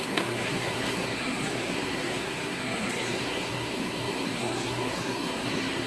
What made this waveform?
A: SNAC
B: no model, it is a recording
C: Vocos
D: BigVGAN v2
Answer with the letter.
A